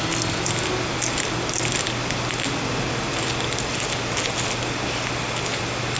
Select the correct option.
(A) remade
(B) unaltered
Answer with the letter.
B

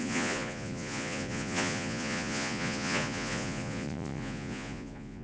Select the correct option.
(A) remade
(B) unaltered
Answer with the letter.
A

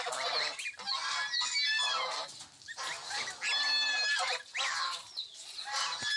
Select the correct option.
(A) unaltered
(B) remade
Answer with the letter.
A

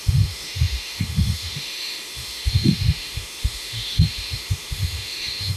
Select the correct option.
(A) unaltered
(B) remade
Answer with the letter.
B